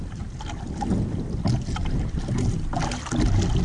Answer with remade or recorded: recorded